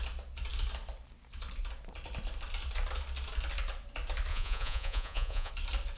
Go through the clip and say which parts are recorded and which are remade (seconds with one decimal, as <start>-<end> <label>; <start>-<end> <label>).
0.0-4.3 recorded; 4.3-5.5 remade; 5.5-6.0 recorded